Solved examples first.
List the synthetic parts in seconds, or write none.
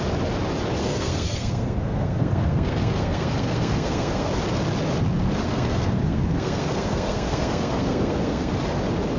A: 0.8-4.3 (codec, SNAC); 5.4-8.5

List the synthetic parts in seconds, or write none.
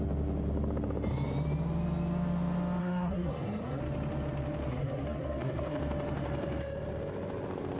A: 2.8-3.8 (codec, SNAC); 4.7-5.8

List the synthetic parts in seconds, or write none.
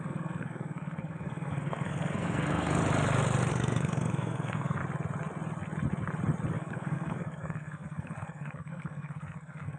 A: 0.0-2.8 (codec, SNAC); 3.5-4.8; 6.5-9.8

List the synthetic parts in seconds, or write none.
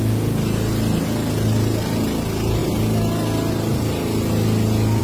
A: none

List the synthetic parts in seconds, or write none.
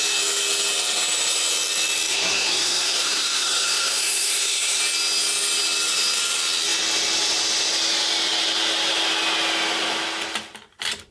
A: 2.1-4.8 (codec, SNAC)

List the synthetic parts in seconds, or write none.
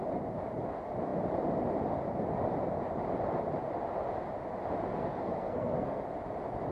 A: 4.9-6.0 (codec, SNAC)